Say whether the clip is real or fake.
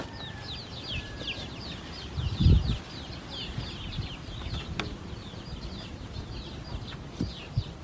fake